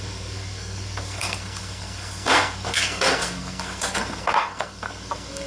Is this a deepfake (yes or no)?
yes